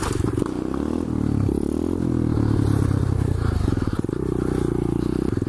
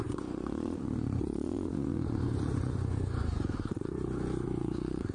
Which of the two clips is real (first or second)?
first